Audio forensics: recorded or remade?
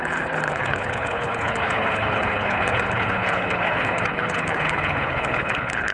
remade